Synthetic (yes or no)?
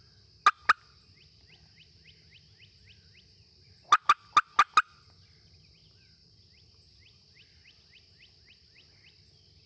no